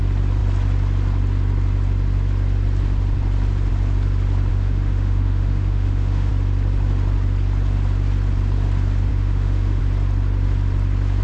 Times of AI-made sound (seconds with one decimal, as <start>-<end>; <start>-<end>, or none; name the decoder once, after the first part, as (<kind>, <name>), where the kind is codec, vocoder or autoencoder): 4.5-6.3 (autoencoder, DAC-VAE); 9.1-9.8